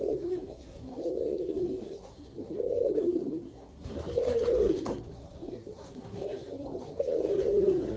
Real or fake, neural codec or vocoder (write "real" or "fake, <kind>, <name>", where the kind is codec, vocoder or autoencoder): fake, codec, SNAC